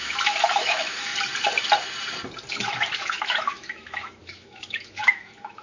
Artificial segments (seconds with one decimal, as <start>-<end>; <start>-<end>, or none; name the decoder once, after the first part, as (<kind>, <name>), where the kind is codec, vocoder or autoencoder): 0.0-1.1 (autoencoder, DAC-VAE); 2.5-5.6